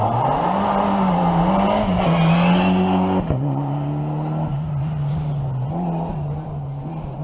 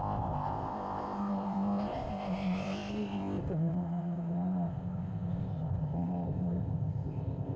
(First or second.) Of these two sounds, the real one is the first